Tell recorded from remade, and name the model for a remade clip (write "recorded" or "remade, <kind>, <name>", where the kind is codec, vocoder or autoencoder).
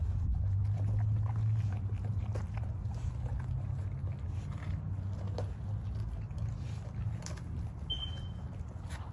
recorded